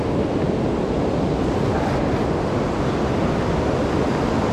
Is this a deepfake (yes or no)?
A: no